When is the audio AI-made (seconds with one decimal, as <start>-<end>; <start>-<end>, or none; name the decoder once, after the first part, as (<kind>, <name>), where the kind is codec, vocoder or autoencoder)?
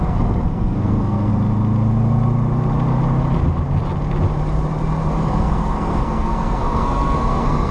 0.0-1.3 (codec, SNAC); 5.1-7.7